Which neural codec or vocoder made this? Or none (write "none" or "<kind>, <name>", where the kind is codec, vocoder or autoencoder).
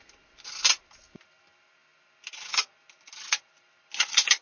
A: none